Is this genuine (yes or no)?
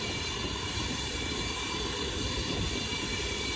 no